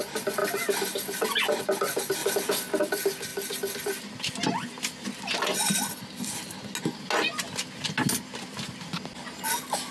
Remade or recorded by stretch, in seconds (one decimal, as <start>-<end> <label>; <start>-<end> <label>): 0.0-9.9 recorded